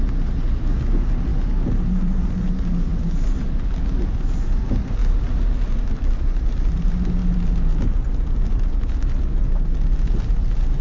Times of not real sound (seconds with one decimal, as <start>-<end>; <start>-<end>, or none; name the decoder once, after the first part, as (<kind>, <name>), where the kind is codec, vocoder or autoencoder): none